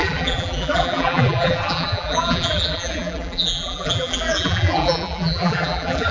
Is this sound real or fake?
fake